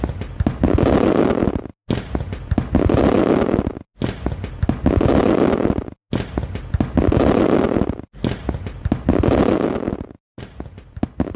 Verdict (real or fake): real